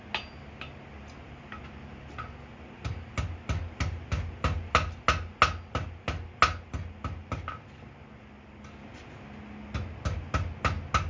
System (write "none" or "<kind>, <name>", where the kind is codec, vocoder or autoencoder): none